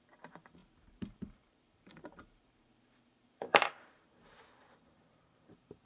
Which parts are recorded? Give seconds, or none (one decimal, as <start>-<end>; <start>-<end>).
none